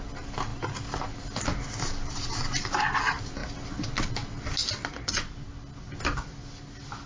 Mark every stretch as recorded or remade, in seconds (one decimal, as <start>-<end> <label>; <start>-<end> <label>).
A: 0.0-7.1 recorded